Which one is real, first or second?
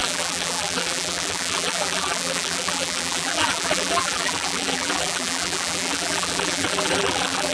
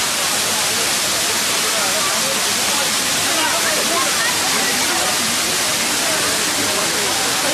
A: second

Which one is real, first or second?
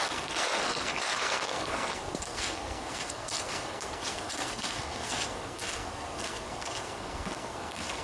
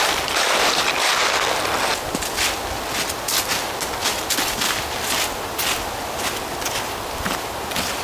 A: second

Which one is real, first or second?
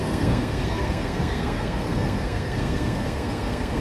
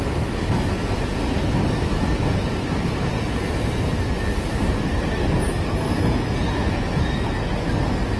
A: second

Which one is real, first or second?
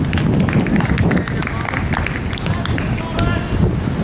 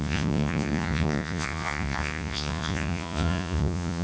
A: first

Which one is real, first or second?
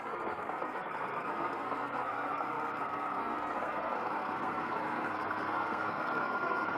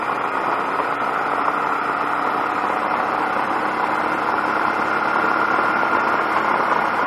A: second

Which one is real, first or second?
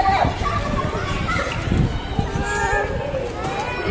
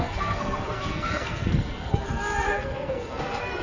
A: first